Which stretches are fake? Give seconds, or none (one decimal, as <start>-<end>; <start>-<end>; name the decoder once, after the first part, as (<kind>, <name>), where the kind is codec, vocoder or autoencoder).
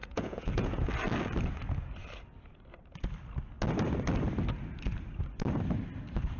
0.0-0.9 (vocoder, Vocos)